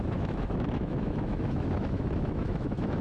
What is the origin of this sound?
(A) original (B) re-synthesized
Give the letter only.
B